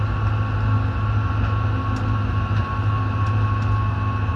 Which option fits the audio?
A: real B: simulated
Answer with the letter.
A